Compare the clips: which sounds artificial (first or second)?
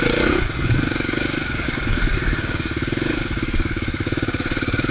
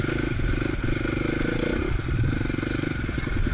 first